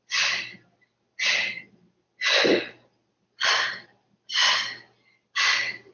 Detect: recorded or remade recorded